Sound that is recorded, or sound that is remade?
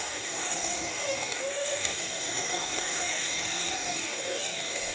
remade